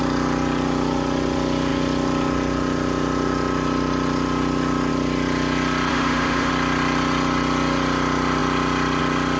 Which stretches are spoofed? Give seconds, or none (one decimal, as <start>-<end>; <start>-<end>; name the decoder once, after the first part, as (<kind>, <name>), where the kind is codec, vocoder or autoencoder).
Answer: 5.9-6.5 (autoencoder, DAC-VAE)